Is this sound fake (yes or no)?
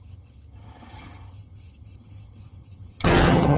yes